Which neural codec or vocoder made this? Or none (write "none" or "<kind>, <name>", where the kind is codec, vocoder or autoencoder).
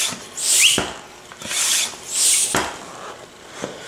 none